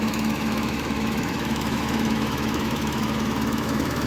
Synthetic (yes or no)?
yes